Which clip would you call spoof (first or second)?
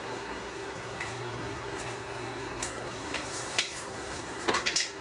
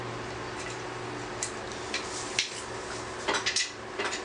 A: first